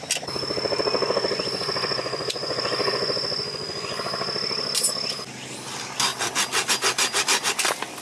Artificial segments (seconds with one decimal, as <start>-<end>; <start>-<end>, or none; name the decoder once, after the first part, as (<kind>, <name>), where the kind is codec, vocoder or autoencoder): 1.0-4.0 (vocoder, Vocos)